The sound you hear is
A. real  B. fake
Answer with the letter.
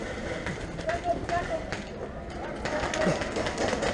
A